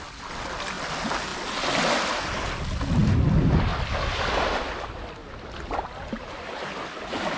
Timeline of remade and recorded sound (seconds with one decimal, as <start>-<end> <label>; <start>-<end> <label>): 0.0-7.4 recorded